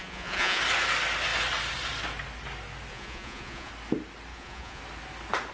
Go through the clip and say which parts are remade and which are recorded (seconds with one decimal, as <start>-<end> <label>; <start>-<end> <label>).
0.0-0.6 remade; 0.6-2.9 recorded; 2.9-3.7 remade; 3.7-4.3 recorded; 4.3-4.8 remade; 4.8-5.5 recorded